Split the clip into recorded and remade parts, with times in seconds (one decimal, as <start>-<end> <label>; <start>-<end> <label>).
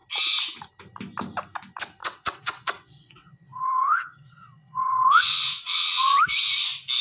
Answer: 0.0-2.0 recorded; 2.0-6.2 remade; 6.2-7.0 recorded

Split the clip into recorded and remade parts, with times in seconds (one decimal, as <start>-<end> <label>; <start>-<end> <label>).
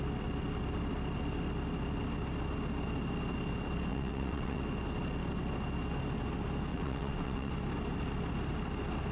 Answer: 0.0-3.9 recorded; 3.9-4.6 remade; 4.6-6.7 recorded; 6.7-7.5 remade; 7.5-9.1 recorded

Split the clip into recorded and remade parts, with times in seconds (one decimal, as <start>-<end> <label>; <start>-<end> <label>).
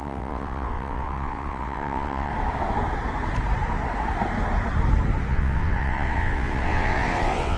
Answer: 0.0-2.3 remade; 2.3-5.3 recorded; 5.3-7.6 remade